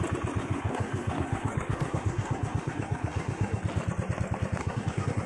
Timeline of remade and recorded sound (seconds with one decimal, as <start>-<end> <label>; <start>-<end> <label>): 0.0-0.4 recorded; 0.4-3.6 remade; 3.6-4.6 recorded; 4.6-5.3 remade